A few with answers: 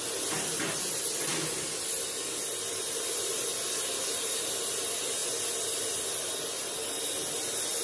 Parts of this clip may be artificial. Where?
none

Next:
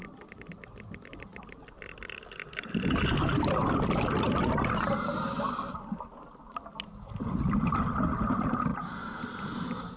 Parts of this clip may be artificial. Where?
none